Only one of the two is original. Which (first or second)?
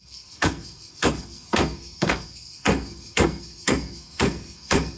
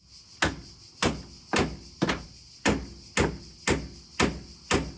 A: second